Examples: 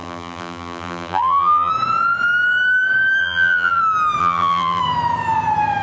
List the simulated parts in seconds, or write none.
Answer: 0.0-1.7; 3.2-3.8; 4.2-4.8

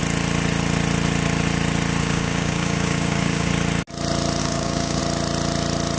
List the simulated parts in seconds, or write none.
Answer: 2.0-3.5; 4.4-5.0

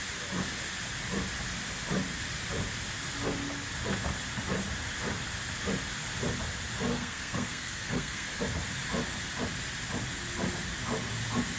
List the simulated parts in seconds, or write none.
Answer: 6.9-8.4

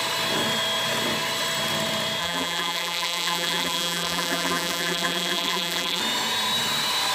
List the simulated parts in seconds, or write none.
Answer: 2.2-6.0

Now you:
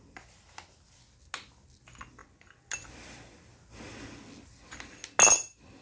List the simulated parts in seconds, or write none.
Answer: none

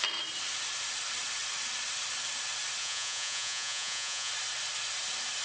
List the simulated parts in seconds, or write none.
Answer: 2.8-4.3

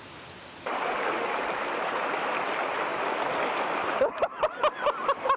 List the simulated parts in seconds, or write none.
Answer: none

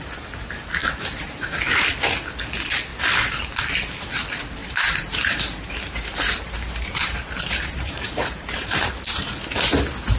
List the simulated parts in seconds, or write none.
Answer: 0.8-1.6; 2.9-3.4; 4.6-8.9